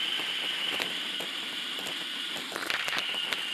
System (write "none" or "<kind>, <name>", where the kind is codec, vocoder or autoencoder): none